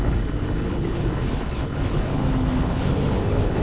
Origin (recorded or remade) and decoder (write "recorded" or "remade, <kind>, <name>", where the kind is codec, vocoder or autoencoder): remade, codec, HILCodec